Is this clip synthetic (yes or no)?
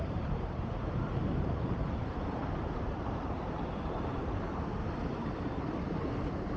yes